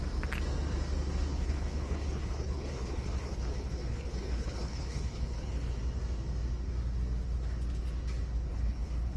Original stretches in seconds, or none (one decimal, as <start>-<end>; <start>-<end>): 0.0-1.3; 5.8-8.5